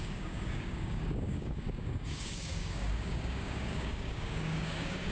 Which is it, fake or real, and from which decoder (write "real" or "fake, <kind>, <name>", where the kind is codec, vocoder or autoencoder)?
fake, codec, DAC